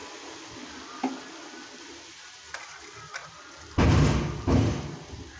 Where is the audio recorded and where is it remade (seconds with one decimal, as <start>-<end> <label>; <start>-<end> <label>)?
0.0-1.8 recorded; 1.8-3.2 remade; 3.2-5.4 recorded